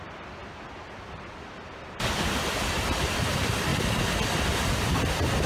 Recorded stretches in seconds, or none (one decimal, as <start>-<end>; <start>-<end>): 3.7-4.5